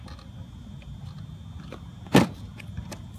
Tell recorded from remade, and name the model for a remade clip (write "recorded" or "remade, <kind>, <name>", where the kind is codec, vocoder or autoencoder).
recorded